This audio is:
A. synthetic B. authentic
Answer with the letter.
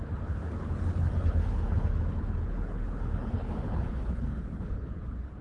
A